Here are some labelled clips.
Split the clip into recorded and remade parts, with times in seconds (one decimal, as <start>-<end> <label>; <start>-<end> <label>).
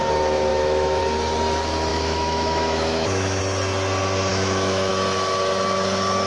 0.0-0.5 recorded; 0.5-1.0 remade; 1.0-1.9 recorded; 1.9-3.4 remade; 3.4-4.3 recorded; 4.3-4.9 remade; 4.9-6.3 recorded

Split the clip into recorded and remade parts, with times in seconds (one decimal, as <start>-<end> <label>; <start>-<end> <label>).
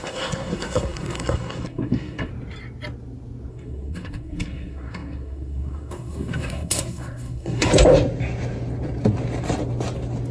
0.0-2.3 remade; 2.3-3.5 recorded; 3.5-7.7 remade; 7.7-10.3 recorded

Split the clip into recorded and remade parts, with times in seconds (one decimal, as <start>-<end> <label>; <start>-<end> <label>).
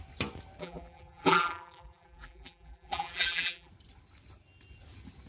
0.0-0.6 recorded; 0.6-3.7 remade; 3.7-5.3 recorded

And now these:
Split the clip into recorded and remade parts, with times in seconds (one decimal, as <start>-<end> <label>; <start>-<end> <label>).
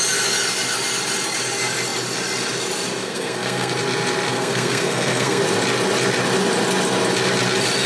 0.0-3.0 recorded; 3.0-3.7 remade; 3.7-4.3 recorded; 4.3-5.4 remade; 5.4-7.9 recorded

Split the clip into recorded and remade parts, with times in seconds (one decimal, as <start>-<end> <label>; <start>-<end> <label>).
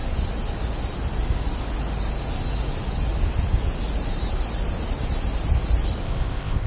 0.0-6.0 recorded; 6.0-6.7 remade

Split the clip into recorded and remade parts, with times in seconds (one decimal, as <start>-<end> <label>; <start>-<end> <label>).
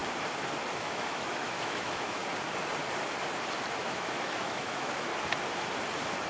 0.0-0.8 recorded; 0.8-2.2 remade; 2.2-3.8 recorded; 3.8-5.1 remade; 5.1-6.3 recorded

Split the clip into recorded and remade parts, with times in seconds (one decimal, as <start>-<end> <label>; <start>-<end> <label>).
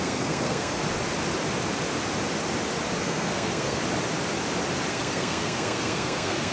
0.0-0.8 remade; 0.8-3.0 recorded; 3.0-3.8 remade; 3.8-4.9 recorded; 4.9-6.5 remade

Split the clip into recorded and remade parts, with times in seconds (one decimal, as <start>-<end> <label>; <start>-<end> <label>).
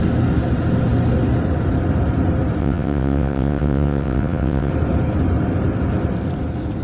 0.0-2.6 recorded; 2.6-4.7 remade; 4.7-6.8 recorded